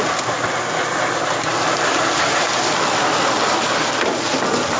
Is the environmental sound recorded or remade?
recorded